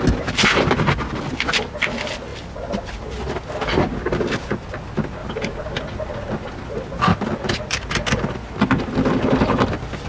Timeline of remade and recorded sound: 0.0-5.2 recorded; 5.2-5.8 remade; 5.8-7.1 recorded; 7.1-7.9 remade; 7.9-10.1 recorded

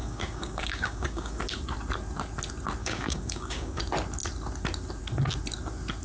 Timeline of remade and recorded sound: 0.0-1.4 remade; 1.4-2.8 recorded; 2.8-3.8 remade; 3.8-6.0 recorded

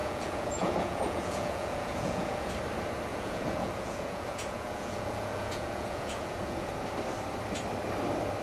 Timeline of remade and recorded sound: 0.0-2.5 remade; 2.5-3.1 recorded; 3.1-6.7 remade; 6.7-8.4 recorded